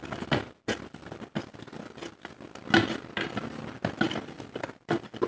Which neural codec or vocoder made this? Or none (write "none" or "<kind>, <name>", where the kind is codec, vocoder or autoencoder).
none